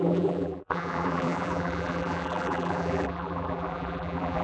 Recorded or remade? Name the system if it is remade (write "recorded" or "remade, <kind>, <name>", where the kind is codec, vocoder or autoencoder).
remade, vocoder, BigVGAN v2